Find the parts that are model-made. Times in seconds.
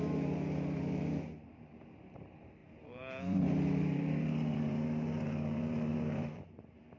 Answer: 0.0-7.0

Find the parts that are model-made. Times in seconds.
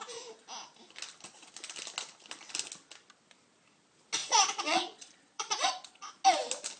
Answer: 4.2-6.2